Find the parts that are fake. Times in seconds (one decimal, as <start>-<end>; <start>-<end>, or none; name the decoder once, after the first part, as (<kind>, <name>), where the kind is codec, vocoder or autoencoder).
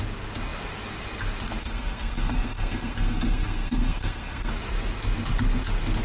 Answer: 1.6-4.5 (codec, SNAC)